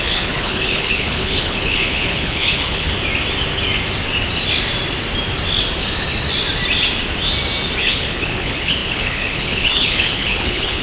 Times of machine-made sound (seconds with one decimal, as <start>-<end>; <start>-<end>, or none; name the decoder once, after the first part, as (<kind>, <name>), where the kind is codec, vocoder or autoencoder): 0.0-2.9 (codec, HILCodec); 7.8-10.8